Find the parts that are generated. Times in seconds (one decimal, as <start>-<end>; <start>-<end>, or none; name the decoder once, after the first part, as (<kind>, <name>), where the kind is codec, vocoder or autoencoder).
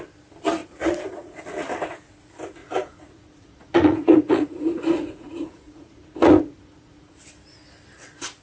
0.6-1.4 (vocoder, Vocos); 2.6-7.2